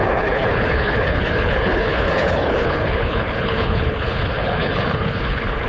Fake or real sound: fake